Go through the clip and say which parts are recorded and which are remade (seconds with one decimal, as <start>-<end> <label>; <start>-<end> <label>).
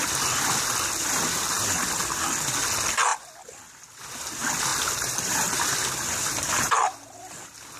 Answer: 0.0-4.7 recorded; 4.7-6.5 remade; 6.5-7.8 recorded